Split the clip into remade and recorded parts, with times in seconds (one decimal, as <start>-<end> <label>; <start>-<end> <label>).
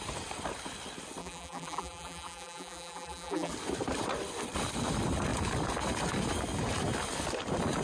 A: 0.0-1.2 recorded; 1.2-3.5 remade; 3.5-7.8 recorded